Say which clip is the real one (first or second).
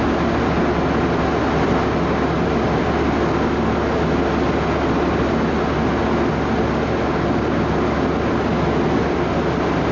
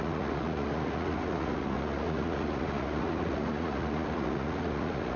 first